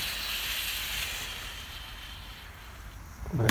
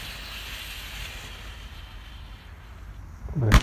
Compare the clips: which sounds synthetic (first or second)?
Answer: first